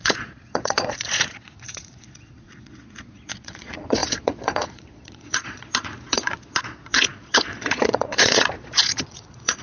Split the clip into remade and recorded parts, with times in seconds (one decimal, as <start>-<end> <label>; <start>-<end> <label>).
0.0-9.6 remade